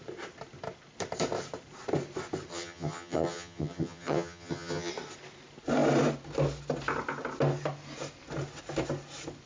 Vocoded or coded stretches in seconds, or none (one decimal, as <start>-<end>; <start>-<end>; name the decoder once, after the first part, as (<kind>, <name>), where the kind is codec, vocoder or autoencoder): 2.5-4.9 (vocoder, HiFi-GAN)